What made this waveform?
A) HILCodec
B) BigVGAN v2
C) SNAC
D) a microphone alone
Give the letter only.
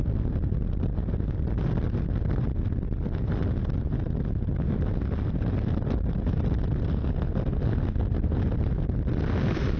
D